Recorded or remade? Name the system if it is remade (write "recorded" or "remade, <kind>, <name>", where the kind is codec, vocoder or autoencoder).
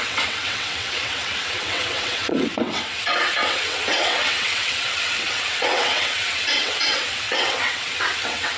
remade, vocoder, WaveNeXt